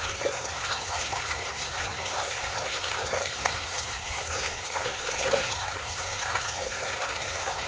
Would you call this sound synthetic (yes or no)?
yes